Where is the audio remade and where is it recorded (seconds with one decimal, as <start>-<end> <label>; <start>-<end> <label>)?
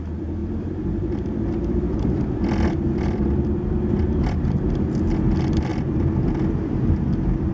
0.0-0.4 recorded; 0.4-4.7 remade; 4.7-5.7 recorded; 5.7-7.5 remade